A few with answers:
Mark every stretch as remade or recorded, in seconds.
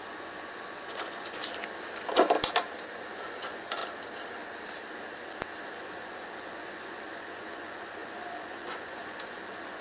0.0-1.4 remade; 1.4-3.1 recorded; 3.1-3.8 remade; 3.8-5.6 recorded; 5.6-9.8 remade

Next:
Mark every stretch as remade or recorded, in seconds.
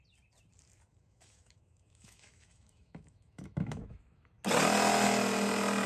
0.0-0.9 recorded; 0.9-4.4 remade; 4.4-5.9 recorded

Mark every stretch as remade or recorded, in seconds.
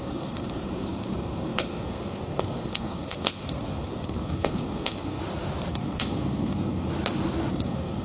0.0-5.2 remade; 5.2-5.7 recorded; 5.7-6.9 remade; 6.9-7.5 recorded; 7.5-8.0 remade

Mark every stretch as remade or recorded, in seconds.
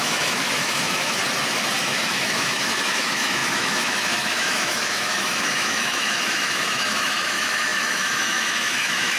0.0-1.2 remade; 1.2-1.8 recorded; 1.8-9.2 remade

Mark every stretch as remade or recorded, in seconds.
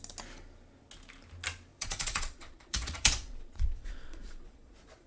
0.0-1.7 recorded; 1.7-5.1 remade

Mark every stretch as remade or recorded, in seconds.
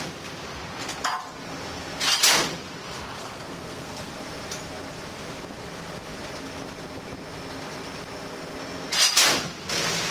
0.0-3.2 recorded; 3.2-4.1 remade; 4.1-10.1 recorded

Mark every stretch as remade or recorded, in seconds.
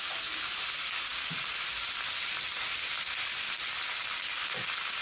0.0-5.0 recorded